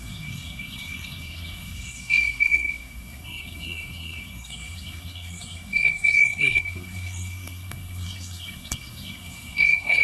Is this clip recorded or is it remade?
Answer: remade